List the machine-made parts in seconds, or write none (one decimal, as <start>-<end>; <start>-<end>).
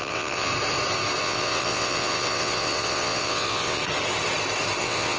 0.0-0.5; 1.2-3.8; 4.8-5.2